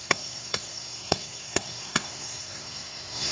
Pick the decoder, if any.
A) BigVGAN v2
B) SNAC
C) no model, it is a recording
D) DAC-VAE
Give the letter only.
B